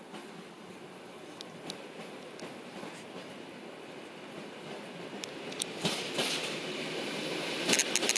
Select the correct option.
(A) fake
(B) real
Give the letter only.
B